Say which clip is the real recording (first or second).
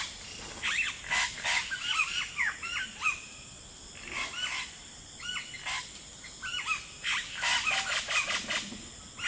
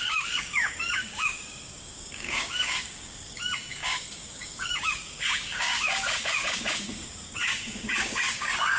first